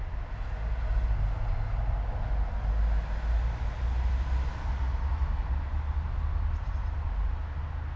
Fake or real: real